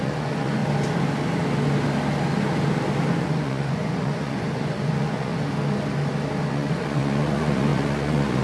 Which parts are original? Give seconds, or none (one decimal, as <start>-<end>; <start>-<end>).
0.6-3.1; 5.3-6.5